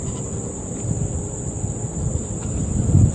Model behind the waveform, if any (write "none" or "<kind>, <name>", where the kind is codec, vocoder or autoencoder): none